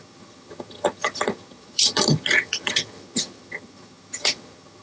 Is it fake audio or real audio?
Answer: fake